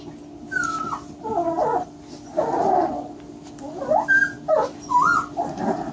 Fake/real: real